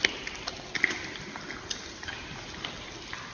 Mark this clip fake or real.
fake